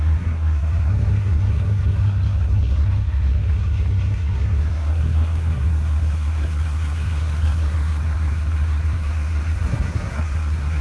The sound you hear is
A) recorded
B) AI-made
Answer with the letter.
B